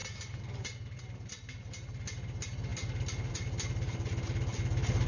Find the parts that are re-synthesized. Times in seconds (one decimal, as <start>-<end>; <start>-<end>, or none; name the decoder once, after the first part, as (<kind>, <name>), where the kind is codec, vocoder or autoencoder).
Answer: none